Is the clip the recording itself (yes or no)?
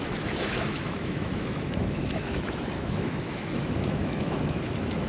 no